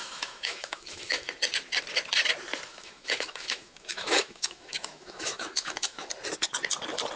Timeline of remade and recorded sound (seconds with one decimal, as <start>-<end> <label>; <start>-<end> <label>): 0.0-1.3 remade; 1.3-2.7 recorded; 2.7-6.1 remade; 6.1-7.2 recorded